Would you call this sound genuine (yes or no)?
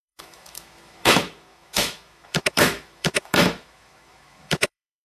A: no